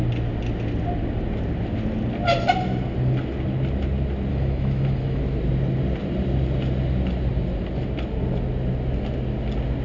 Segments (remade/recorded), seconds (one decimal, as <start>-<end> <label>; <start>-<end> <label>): 0.0-4.3 recorded; 4.3-5.2 remade; 5.2-9.8 recorded